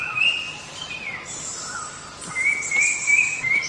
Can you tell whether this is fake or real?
fake